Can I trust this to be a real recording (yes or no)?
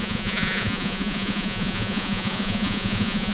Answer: no